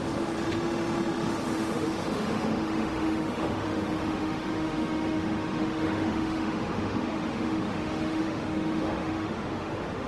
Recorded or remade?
remade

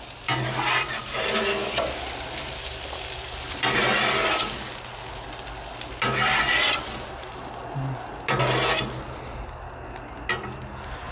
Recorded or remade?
recorded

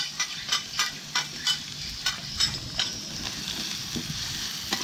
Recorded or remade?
recorded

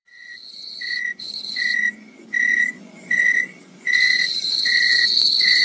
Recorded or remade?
remade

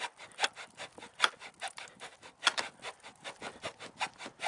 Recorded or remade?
recorded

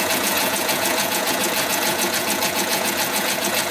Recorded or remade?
remade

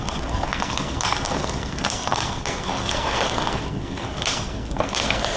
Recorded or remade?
remade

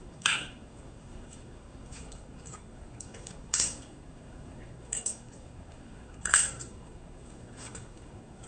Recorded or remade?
remade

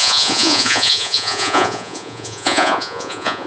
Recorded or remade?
remade